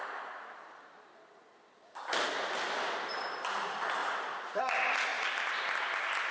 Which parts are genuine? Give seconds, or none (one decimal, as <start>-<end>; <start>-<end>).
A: 0.0-4.0; 4.6-5.1; 5.6-6.3